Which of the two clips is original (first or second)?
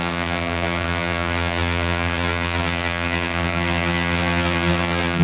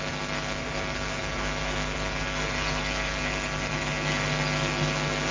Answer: second